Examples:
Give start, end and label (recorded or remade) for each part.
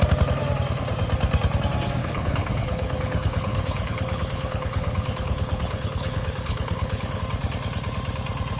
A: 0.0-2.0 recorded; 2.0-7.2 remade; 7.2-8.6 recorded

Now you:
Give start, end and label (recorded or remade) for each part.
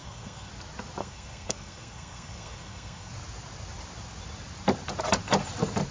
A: 0.0-0.5 remade; 0.5-1.0 recorded; 1.0-3.1 remade; 3.1-5.9 recorded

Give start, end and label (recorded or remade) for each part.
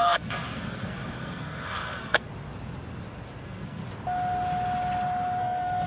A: 0.0-2.3 remade; 2.3-3.4 recorded; 3.4-3.8 remade; 3.8-5.4 recorded; 5.4-5.9 remade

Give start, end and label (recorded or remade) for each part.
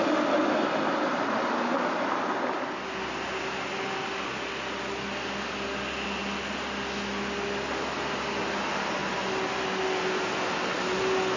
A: 0.0-11.4 recorded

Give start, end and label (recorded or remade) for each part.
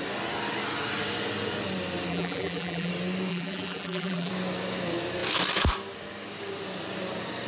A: 0.0-2.1 recorded; 2.1-2.9 remade; 2.9-3.3 recorded; 3.3-4.3 remade; 4.3-7.5 recorded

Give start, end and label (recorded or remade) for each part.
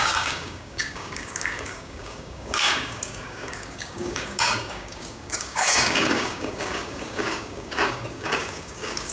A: 0.0-9.1 remade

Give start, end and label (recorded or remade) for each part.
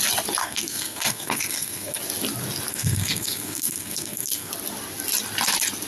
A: 0.0-0.4 recorded; 0.4-2.0 remade; 2.0-2.7 recorded; 2.7-4.5 remade; 4.5-5.9 recorded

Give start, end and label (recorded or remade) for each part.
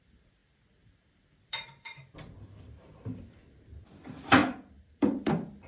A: 0.0-5.7 remade